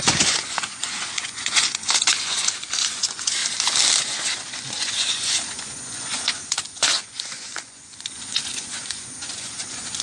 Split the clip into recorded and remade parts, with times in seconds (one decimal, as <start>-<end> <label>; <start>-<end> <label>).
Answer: 0.0-3.4 remade; 3.4-4.0 recorded; 4.0-10.0 remade

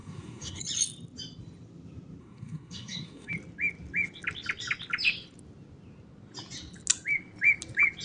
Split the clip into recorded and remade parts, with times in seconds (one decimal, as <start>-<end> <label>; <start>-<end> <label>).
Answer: 0.0-0.6 remade; 0.6-2.2 recorded; 2.2-3.3 remade; 3.3-8.0 recorded

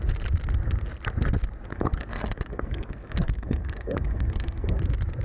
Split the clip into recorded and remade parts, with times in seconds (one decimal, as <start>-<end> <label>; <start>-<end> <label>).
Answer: 0.0-1.7 recorded; 1.7-4.8 remade; 4.8-5.2 recorded

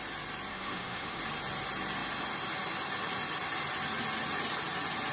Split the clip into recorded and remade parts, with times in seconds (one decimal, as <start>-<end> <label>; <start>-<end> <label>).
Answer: 0.0-0.5 recorded; 0.5-1.2 remade; 1.2-5.1 recorded

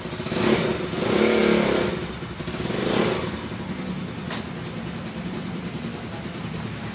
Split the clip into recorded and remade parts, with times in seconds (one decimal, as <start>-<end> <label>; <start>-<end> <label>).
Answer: 0.0-6.9 recorded

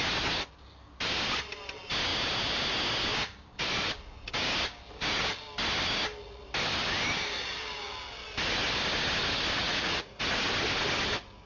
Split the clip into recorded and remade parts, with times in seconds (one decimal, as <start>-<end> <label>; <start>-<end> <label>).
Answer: 0.0-9.6 recorded; 9.6-10.3 remade; 10.3-11.5 recorded

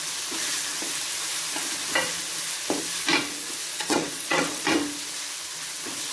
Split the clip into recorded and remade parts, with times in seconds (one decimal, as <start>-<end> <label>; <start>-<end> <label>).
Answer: 0.0-3.7 recorded; 3.7-4.6 remade; 4.6-6.1 recorded